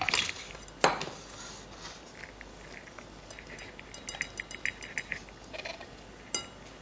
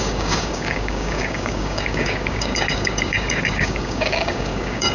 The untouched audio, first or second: first